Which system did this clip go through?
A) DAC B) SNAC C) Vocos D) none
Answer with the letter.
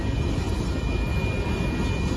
D